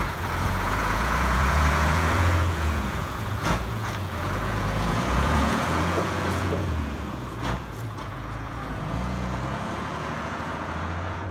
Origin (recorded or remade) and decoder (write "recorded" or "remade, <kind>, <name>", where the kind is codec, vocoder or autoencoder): remade, vocoder, Vocos